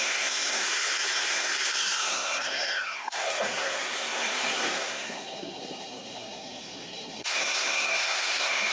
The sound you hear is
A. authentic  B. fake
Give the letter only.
B